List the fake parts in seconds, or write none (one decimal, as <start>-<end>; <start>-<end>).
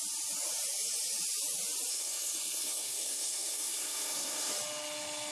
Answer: 1.9-4.5